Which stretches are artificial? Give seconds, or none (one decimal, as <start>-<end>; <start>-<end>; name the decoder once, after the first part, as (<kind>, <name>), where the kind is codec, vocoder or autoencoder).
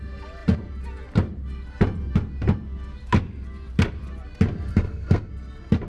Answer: 4.7-5.3 (codec, SNAC)